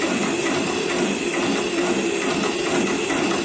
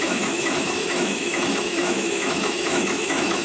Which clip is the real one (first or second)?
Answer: first